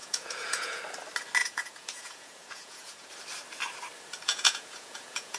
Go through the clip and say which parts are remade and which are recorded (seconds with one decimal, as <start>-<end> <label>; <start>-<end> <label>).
0.0-0.8 remade; 0.8-1.4 recorded; 1.4-3.1 remade; 3.1-4.3 recorded; 4.3-5.4 remade